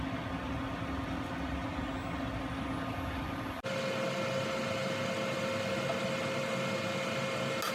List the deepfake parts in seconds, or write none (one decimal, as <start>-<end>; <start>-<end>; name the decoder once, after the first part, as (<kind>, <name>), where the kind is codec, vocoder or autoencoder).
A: none